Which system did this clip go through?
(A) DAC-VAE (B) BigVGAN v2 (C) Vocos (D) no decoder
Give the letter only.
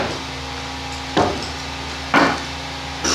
D